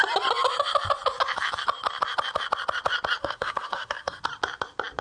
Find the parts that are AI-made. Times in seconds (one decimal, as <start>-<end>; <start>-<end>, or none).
3.2-4.2